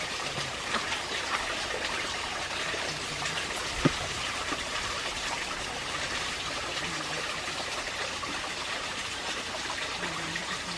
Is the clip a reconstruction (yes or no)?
yes